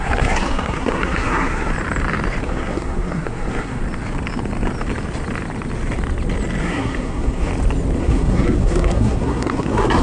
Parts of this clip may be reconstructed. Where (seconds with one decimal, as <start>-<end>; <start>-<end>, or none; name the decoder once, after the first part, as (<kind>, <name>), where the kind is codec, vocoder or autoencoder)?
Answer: 0.0-1.7 (codec, SNAC); 2.4-3.8; 6.6-7.5; 8.0-10.0